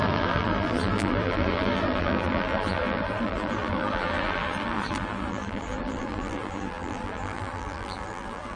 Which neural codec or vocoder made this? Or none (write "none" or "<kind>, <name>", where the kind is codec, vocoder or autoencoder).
vocoder, BigVGAN v2